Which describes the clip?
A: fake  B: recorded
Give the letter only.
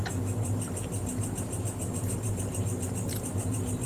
B